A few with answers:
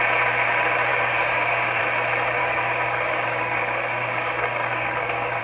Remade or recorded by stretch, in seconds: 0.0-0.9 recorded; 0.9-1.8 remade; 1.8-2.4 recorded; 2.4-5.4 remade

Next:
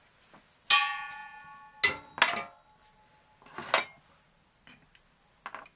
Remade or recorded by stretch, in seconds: 0.0-5.8 recorded

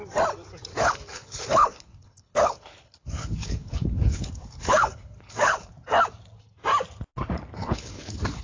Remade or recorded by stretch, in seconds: 0.0-0.7 recorded; 0.7-5.7 remade; 5.7-7.6 recorded; 7.6-8.4 remade